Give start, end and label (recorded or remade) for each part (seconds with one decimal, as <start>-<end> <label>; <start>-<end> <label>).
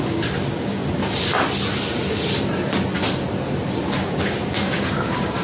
0.0-0.8 remade; 0.8-4.0 recorded; 4.0-5.4 remade